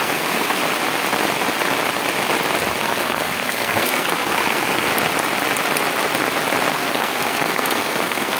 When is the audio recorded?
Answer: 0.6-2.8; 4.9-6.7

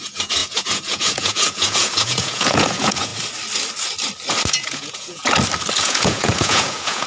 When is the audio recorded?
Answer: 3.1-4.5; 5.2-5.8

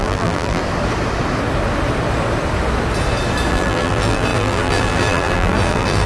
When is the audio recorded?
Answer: 0.6-3.5